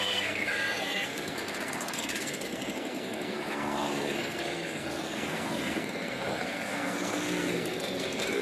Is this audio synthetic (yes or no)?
yes